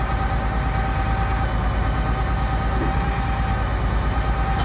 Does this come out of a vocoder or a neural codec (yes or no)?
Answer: no